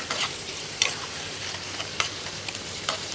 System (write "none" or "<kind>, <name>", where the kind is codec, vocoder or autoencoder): vocoder, BigVGAN v2